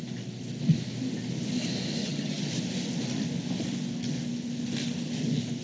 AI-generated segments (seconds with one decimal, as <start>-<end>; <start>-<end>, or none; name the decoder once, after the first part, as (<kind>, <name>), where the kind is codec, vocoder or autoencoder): 2.0-2.5 (vocoder, HiFi-GAN)